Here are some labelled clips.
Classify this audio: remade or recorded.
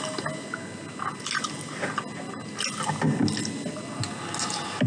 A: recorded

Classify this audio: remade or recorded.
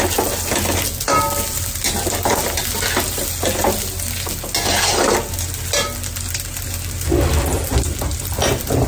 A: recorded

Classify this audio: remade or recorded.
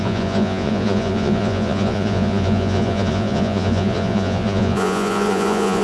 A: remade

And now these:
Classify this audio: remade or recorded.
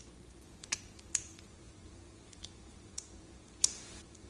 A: remade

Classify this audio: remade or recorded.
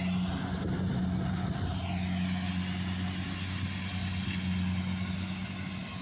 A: recorded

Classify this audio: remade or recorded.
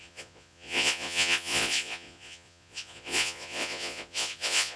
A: remade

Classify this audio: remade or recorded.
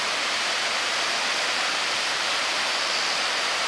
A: recorded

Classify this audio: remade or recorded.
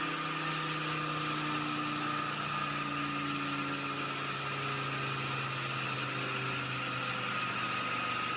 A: recorded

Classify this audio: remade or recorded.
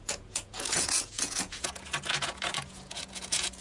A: remade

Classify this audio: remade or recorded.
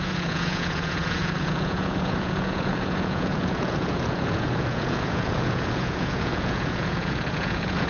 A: remade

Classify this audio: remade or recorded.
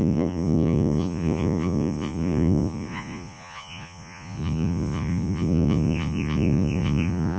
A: remade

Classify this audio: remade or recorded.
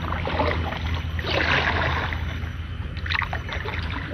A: recorded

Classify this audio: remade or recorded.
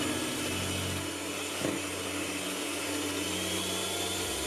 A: recorded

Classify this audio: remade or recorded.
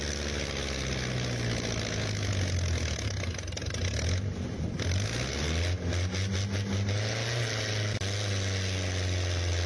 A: recorded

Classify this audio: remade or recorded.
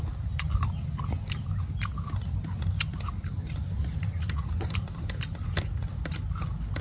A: recorded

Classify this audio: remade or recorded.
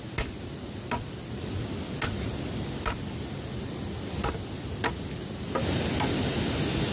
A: recorded